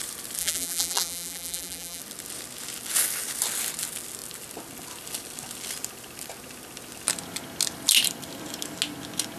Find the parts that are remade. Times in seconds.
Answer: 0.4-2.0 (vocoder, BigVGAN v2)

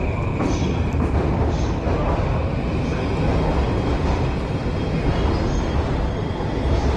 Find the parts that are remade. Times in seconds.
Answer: 0.0-1.2 (vocoder, BigVGAN v2); 1.9-2.9; 3.6-4.6; 5.2-7.0

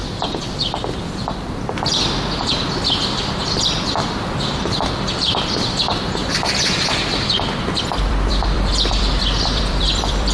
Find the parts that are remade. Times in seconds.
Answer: 0.0-6.2 (vocoder, BigVGAN v2); 7.6-10.3

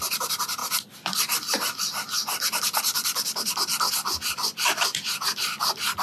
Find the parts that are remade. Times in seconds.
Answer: 0.0-0.6 (vocoder, BigVGAN v2); 3.9-6.0

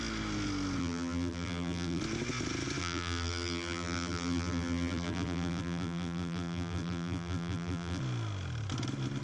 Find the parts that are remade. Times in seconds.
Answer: 0.8-2.0 (vocoder, BigVGAN v2); 2.8-8.0

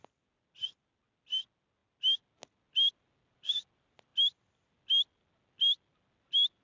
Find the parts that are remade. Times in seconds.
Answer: none